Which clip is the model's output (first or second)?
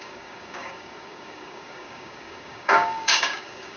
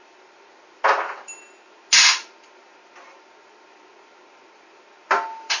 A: first